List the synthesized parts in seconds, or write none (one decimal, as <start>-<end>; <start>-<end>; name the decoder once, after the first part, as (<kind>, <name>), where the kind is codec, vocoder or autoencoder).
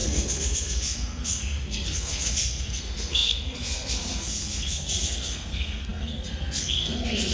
0.0-7.3 (codec, SNAC)